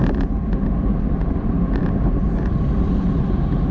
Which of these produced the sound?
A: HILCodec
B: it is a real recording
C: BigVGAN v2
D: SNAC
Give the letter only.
B